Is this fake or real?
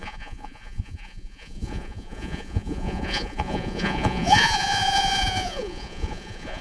fake